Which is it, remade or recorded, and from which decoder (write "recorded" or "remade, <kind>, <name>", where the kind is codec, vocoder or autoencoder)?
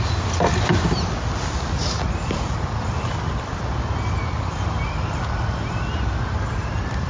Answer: recorded